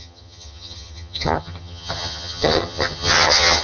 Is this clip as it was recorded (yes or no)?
no